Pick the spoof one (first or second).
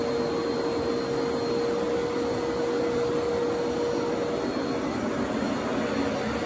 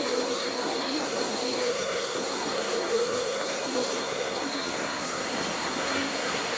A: second